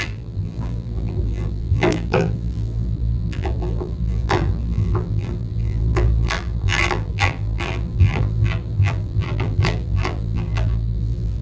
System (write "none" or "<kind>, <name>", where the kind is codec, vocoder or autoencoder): vocoder, BigVGAN v2